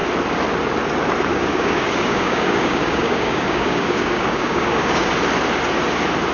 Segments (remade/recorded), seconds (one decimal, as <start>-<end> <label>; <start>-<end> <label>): 0.0-1.3 recorded; 1.3-5.1 remade; 5.1-6.3 recorded